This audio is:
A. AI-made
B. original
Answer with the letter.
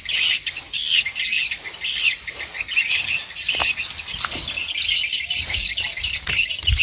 B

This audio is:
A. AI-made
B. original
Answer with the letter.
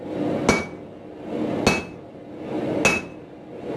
B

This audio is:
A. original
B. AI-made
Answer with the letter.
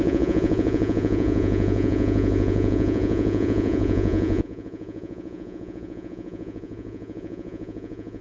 B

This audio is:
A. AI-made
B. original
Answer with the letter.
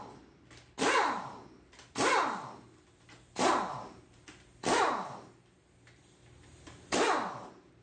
B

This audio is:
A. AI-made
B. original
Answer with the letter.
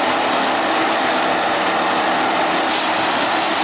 B